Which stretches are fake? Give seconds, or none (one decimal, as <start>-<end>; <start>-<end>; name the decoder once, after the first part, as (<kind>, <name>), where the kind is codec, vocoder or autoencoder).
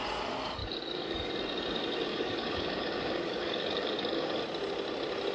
0.6-1.3 (codec, DAC); 2.1-4.4